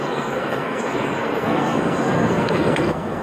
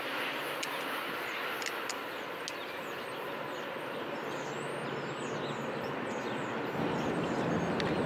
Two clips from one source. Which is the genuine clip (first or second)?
second